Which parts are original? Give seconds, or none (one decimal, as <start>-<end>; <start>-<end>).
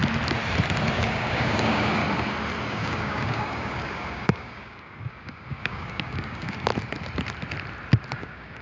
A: 0.0-0.9; 2.0-2.7; 6.7-8.1